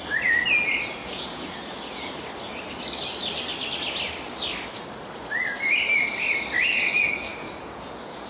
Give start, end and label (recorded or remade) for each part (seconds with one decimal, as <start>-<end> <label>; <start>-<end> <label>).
0.0-1.0 recorded; 1.0-2.1 remade; 2.1-7.3 recorded; 7.3-8.3 remade